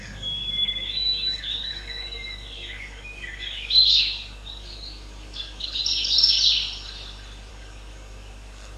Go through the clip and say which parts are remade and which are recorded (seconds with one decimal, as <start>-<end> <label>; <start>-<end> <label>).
0.0-5.8 remade; 5.8-7.5 recorded; 7.5-8.8 remade